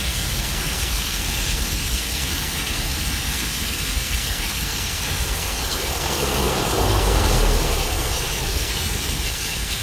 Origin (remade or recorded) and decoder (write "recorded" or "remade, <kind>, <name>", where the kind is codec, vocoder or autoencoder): remade, codec, SNAC